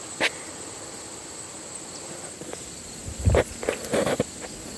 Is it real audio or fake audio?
real